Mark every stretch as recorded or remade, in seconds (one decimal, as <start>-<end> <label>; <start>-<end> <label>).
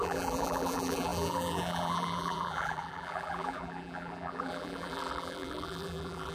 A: 0.0-6.3 remade